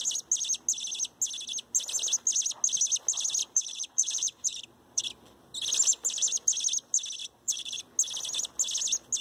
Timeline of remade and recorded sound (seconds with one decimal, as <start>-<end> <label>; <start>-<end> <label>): 0.0-3.4 recorded; 3.4-5.0 remade; 5.0-7.2 recorded; 7.2-7.8 remade; 7.8-9.2 recorded